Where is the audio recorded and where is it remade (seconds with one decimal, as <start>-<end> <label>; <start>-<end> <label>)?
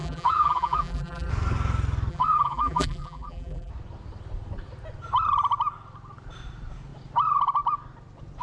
0.0-1.3 remade; 1.3-2.1 recorded; 2.1-3.7 remade; 3.7-8.4 recorded